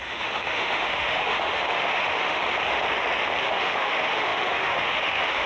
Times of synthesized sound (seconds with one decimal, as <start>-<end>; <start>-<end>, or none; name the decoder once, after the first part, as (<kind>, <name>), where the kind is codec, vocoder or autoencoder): 0.0-2.4 (autoencoder, DAC-VAE); 3.4-5.5